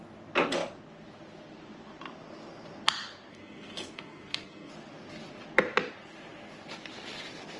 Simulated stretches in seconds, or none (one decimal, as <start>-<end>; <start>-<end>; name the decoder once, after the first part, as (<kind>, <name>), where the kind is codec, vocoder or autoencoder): 3.3-4.7 (codec, SNAC)